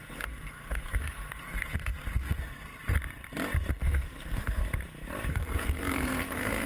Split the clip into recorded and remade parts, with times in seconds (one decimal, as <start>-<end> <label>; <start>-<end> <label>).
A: 0.0-2.8 remade; 2.8-3.7 recorded; 3.7-4.6 remade; 4.6-5.3 recorded; 5.3-6.7 remade